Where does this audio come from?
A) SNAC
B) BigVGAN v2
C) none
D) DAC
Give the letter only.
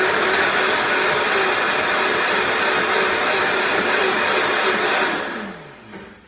C